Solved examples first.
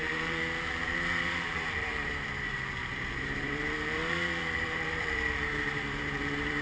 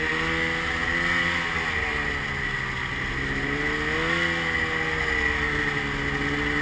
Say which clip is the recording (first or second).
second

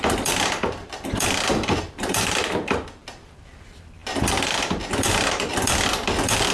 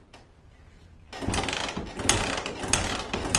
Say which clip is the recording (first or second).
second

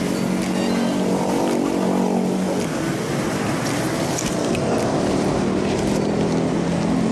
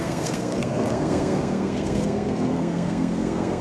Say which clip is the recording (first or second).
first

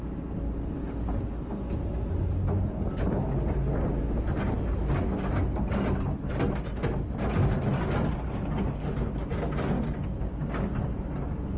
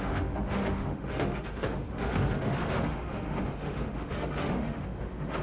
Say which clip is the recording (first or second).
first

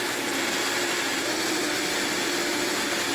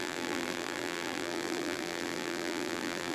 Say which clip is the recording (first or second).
first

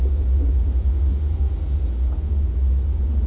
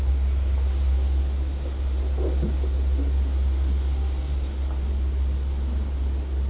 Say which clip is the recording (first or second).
second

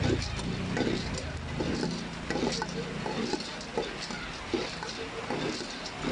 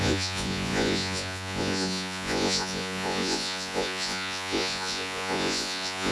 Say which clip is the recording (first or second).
first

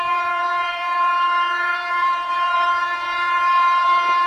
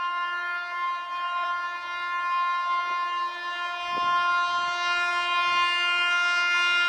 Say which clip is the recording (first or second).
second